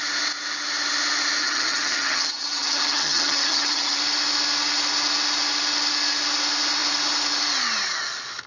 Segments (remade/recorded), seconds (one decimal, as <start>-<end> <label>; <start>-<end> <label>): 0.0-1.4 recorded; 1.4-4.0 remade; 4.0-8.5 recorded